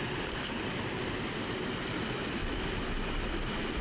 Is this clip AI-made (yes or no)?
no